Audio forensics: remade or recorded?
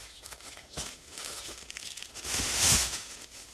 remade